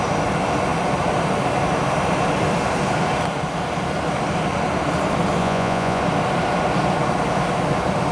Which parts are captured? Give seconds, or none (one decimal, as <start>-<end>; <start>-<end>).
0.0-5.4; 6.0-8.1